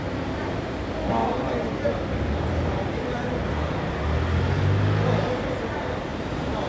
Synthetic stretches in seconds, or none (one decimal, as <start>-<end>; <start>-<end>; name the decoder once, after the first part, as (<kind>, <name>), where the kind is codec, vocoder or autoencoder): 1.2-3.5 (vocoder, BigVGAN v2)